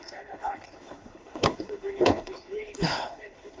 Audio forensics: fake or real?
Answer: fake